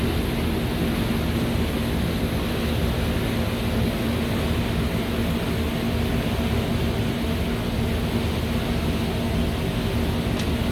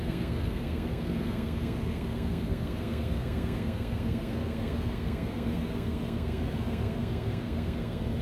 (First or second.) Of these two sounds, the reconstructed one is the second